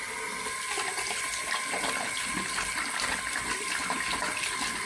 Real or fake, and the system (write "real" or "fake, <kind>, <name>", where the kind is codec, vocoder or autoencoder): real